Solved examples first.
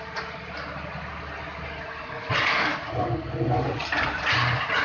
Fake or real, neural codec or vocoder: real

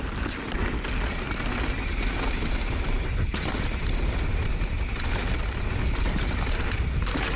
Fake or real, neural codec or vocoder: real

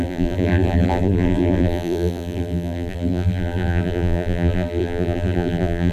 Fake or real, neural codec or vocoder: fake, vocoder, BigVGAN v2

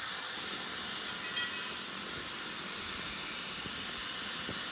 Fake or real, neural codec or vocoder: real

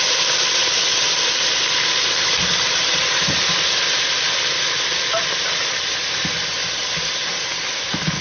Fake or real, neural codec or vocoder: real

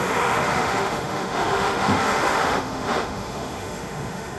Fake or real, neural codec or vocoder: fake, autoencoder, DAC-VAE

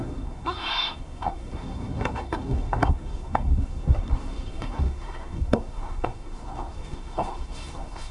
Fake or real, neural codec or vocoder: fake, codec, SNAC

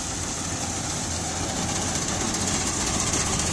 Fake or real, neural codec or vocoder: real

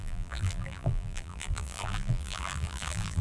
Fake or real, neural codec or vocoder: fake, vocoder, BigVGAN v2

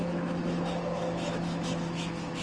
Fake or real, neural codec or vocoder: fake, autoencoder, DAC-VAE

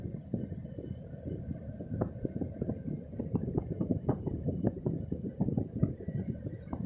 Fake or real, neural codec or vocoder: fake, vocoder, BigVGAN v2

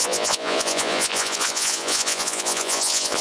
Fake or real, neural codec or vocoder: fake, vocoder, Vocos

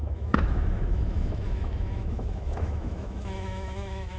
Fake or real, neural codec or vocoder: fake, autoencoder, DAC-VAE